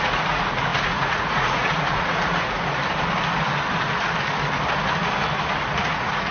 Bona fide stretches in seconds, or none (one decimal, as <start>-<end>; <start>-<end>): 2.8-5.8